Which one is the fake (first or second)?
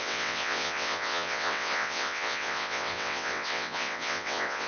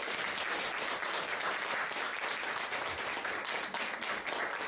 first